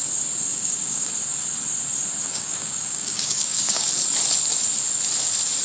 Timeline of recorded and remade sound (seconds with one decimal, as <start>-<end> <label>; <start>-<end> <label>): 0.0-0.5 recorded; 0.5-1.1 remade; 1.1-2.2 recorded; 2.2-3.9 remade; 3.9-5.6 recorded